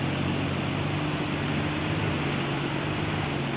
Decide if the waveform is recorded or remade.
recorded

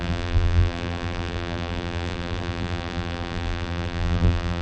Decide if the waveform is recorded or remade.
remade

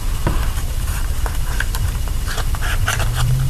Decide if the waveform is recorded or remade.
remade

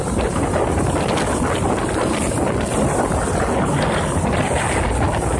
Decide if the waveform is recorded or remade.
recorded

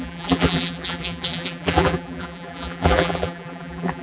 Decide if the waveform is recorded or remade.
remade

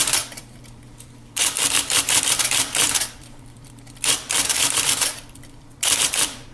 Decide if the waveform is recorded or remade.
remade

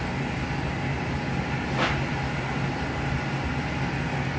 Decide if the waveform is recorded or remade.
recorded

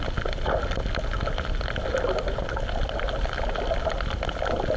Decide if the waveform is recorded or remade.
recorded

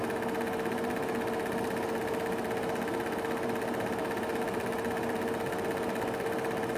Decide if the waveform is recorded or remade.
recorded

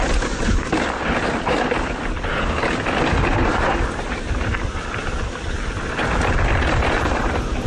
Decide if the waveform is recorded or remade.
recorded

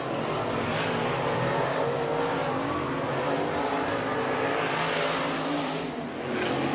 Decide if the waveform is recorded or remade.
recorded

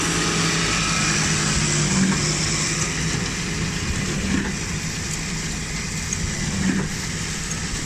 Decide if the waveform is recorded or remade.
recorded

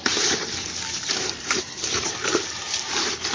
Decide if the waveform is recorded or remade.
remade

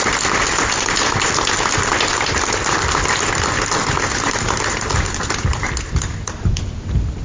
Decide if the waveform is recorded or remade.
recorded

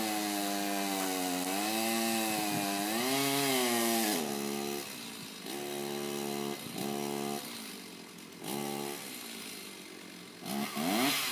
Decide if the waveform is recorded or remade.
recorded